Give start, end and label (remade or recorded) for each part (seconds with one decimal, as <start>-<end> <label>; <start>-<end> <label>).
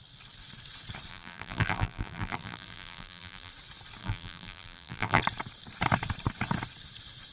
0.0-1.1 recorded; 1.1-3.5 remade; 3.5-4.0 recorded; 4.0-5.2 remade; 5.2-7.3 recorded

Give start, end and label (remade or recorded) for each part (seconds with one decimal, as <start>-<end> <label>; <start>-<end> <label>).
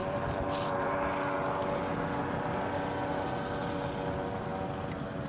0.0-0.9 remade; 0.9-5.3 recorded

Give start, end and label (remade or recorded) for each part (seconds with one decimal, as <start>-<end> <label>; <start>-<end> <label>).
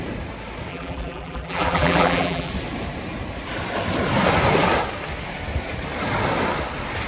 0.0-0.7 recorded; 0.7-2.5 remade; 2.5-7.1 recorded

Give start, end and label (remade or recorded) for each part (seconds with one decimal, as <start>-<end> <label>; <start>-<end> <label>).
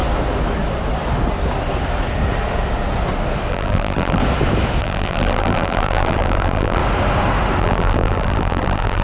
0.0-3.5 recorded; 3.5-4.2 remade; 4.2-4.8 recorded; 4.8-6.8 remade; 6.8-7.6 recorded; 7.6-9.0 remade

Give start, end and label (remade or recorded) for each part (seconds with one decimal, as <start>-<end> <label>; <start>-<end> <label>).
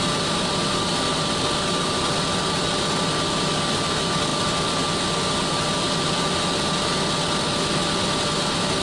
0.0-8.8 recorded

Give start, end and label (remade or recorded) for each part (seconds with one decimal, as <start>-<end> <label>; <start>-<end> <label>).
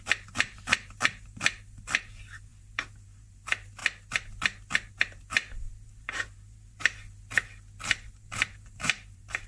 0.0-3.8 remade; 3.8-4.9 recorded; 4.9-6.8 remade; 6.8-7.9 recorded; 7.9-9.5 remade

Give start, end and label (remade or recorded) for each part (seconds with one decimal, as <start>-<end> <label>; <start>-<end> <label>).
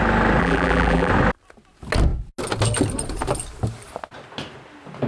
0.0-0.4 recorded; 0.4-1.1 remade; 1.1-5.1 recorded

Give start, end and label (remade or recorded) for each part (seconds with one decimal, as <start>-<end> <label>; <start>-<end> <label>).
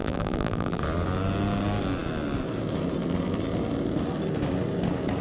0.0-0.8 remade; 0.8-5.2 recorded